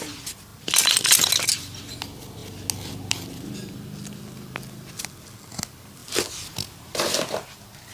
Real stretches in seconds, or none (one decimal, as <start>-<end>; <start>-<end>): 0.0-7.9